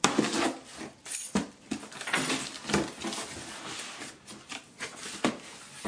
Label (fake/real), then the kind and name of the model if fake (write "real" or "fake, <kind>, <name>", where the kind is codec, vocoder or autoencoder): real